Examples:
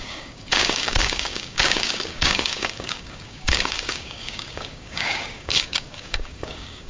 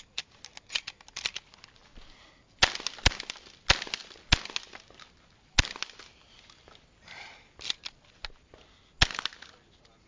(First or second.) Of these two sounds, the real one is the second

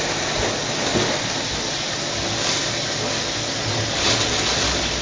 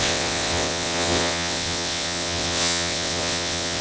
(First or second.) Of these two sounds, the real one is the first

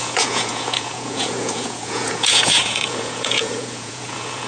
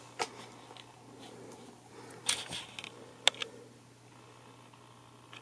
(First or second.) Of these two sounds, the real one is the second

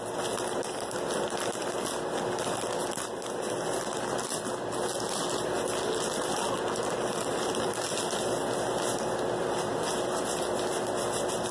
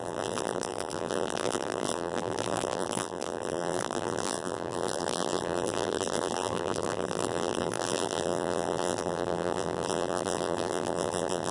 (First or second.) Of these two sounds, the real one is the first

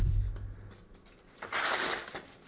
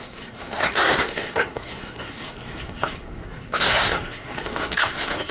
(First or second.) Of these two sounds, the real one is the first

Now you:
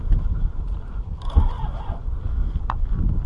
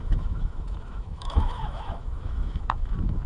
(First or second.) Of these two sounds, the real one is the first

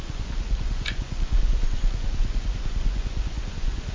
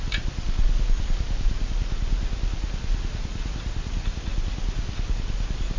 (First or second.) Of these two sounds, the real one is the second